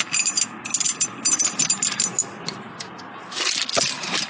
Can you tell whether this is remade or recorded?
recorded